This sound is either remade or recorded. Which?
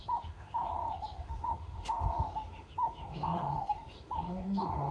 remade